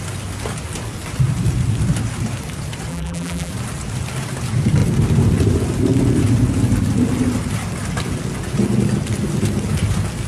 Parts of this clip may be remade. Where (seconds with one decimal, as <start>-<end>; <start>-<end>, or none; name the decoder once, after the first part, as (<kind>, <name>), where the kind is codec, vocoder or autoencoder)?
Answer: 2.9-3.5 (vocoder, BigVGAN v2)